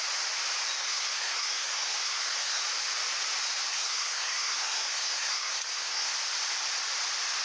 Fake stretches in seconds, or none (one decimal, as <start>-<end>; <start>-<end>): 0.8-2.6; 3.7-6.1